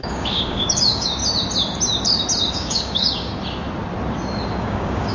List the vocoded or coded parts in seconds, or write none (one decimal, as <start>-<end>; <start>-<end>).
0.0-1.2; 2.5-3.3; 4.6-5.1